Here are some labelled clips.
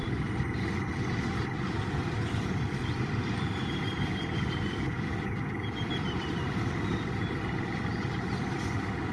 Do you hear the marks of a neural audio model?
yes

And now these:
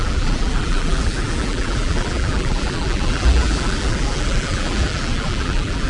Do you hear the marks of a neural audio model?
yes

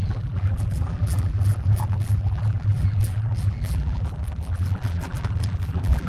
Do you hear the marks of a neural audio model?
yes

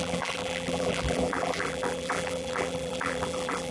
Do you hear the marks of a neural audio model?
yes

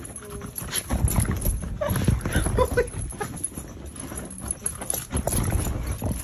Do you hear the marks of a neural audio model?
no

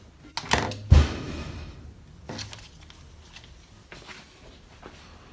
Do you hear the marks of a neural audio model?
no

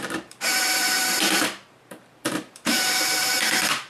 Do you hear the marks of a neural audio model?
yes